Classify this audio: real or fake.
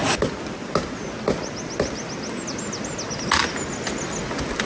real